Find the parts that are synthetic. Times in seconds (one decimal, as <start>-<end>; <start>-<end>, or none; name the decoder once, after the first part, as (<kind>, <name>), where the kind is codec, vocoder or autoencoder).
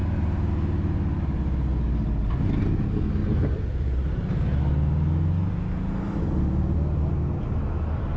0.0-0.5 (vocoder, BigVGAN v2); 3.2-4.6